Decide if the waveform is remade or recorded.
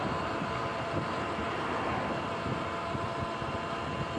recorded